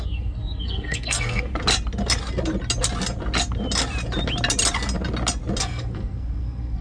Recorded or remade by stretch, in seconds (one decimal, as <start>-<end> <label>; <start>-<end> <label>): 0.0-1.5 remade; 1.5-5.6 recorded; 5.6-6.8 remade